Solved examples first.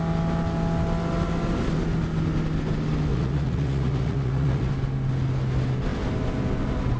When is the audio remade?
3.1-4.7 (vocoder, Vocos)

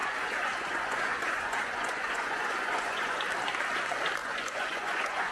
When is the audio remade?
0.0-3.2 (vocoder, Vocos); 4.2-5.3

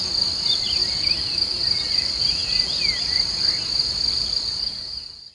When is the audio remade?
none

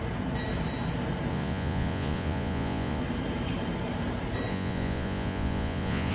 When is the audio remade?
1.3-3.0 (vocoder, Vocos); 4.5-6.1